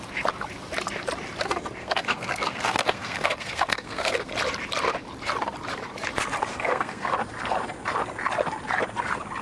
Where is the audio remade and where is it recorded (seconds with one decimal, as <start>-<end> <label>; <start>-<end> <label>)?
0.0-1.8 recorded; 1.8-4.3 remade; 4.3-6.5 recorded; 6.5-7.1 remade; 7.1-9.4 recorded